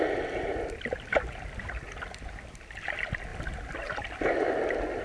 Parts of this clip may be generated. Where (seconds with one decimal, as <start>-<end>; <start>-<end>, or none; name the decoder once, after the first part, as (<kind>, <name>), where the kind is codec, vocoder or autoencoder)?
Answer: none